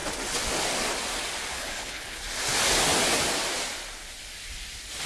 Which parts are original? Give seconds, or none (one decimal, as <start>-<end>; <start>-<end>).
0.0-1.5; 2.2-5.1